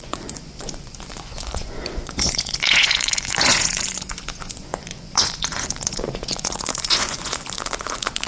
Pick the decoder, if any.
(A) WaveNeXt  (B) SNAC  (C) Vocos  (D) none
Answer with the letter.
C